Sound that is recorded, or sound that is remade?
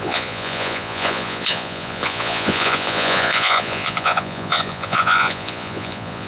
remade